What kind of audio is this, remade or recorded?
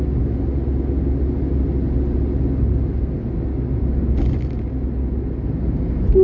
recorded